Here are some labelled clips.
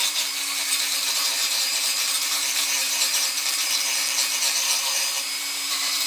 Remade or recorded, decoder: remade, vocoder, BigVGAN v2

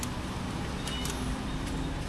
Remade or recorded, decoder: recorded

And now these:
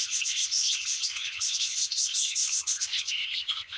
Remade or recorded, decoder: remade, codec, ZipCodec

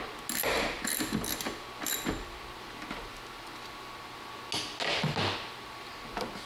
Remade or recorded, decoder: recorded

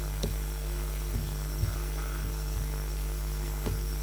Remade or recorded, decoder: remade, codec, SNAC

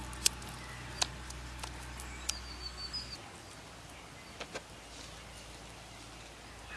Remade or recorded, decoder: recorded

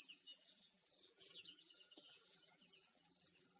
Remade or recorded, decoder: remade, vocoder, BigVGAN v2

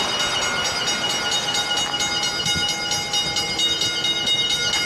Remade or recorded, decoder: recorded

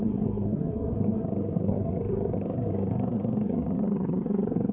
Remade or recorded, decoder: remade, codec, SNAC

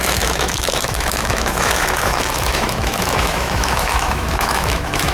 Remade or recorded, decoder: remade, autoencoder, DAC-VAE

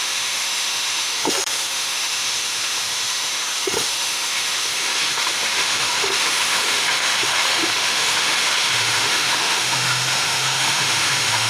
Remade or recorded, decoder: remade, autoencoder, DAC-VAE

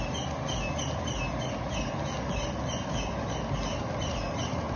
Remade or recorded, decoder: recorded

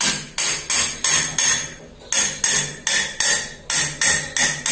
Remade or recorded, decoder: recorded